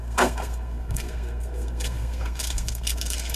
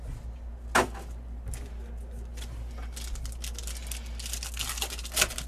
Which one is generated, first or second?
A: first